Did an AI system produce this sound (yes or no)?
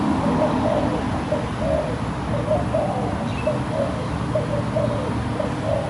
no